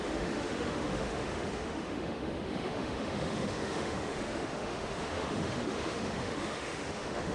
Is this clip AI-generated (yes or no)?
yes